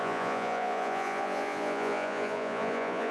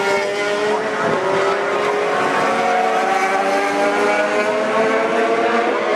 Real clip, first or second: second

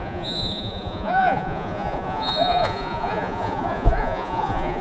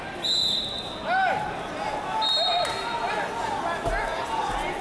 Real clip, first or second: second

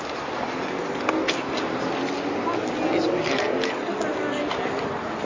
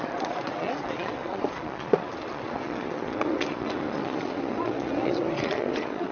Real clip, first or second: first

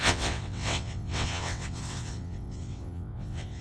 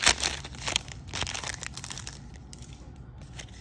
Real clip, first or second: second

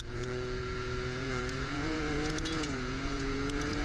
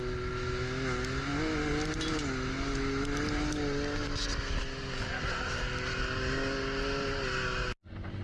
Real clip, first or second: second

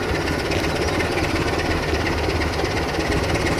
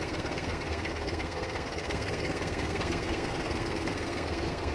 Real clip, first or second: first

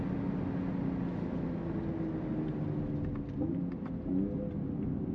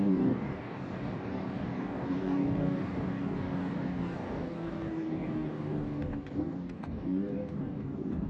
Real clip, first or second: first